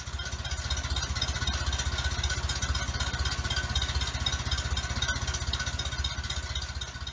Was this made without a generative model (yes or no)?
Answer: yes